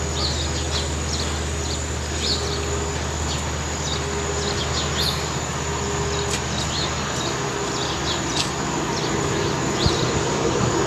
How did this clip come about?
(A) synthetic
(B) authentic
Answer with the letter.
B